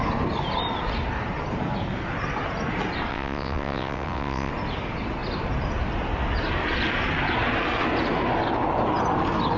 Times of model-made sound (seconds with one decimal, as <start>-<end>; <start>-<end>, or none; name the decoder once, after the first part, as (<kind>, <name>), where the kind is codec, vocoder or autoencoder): 3.1-4.5 (vocoder, WaveNeXt)